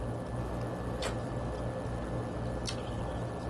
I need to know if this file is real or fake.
real